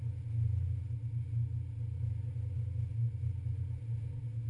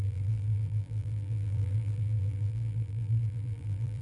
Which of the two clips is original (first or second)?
first